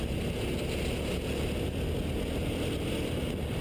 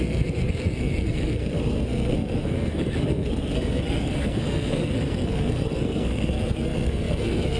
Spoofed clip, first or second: second